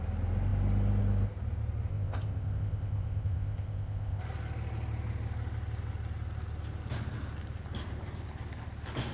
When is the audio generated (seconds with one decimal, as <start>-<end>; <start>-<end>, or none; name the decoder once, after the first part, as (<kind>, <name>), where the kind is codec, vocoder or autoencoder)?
1.9-4.2 (codec, ZipCodec)